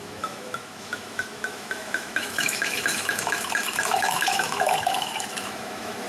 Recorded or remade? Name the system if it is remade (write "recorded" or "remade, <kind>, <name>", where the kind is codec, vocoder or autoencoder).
remade, autoencoder, DAC-VAE